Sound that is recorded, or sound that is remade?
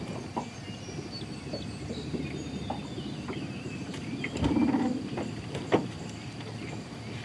recorded